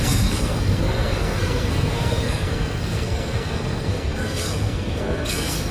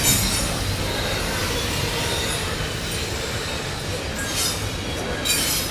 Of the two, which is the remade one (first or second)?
first